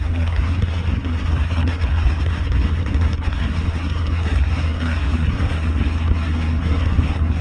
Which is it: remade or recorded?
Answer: remade